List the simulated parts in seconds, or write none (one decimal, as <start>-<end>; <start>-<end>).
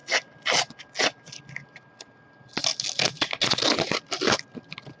none